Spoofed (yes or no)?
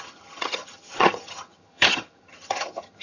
yes